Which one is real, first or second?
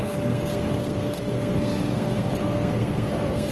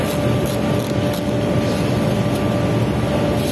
second